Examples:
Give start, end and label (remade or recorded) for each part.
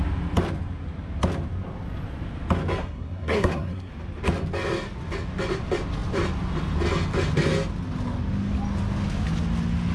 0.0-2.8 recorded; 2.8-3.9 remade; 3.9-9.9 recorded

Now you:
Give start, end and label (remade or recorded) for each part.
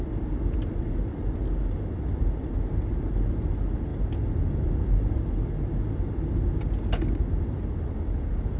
0.0-8.6 recorded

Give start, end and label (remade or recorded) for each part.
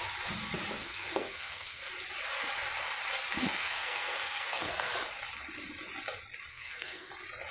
0.0-0.8 recorded; 0.8-1.9 remade; 1.9-3.4 recorded; 3.4-4.9 remade; 4.9-6.5 recorded; 6.5-7.1 remade; 7.1-7.5 recorded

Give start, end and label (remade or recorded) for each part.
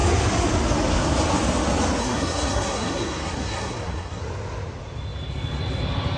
0.0-2.0 recorded; 2.0-4.2 remade; 4.2-6.2 recorded